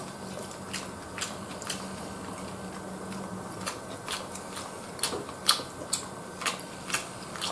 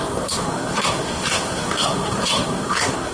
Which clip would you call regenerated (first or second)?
second